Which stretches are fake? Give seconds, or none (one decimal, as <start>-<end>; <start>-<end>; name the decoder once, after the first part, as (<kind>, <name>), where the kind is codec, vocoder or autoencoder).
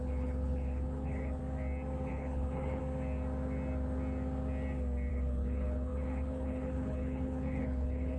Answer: 0.0-1.4 (codec, HILCodec); 2.1-2.8; 5.1-8.2